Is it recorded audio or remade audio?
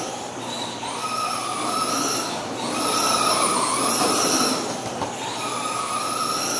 recorded